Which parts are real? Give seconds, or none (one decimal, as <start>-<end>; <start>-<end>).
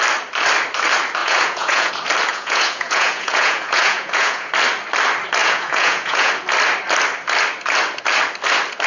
0.0-1.2; 1.9-2.3; 4.5-5.4; 6.3-8.9